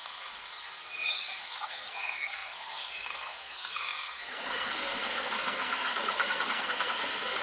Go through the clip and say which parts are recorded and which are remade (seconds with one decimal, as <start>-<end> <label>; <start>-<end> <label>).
0.0-7.4 remade